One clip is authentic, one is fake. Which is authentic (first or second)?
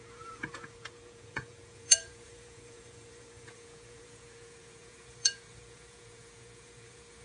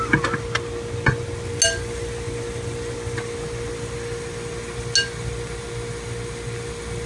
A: second